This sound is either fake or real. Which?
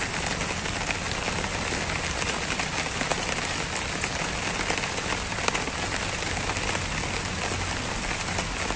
real